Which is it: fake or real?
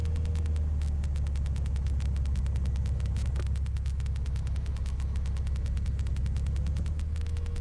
real